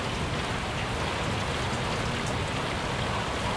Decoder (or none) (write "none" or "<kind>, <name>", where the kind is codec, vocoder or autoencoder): none